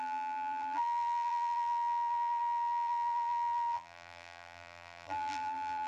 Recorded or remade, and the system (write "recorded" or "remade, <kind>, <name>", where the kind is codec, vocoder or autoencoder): remade, vocoder, BigVGAN v2